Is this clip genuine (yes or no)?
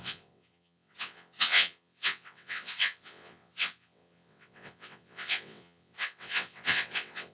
no